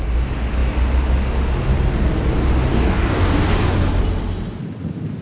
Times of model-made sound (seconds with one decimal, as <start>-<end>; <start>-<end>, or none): 2.7-3.3